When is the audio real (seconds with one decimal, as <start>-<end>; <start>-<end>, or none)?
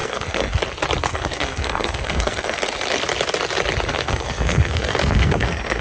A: 0.6-1.1; 2.6-3.9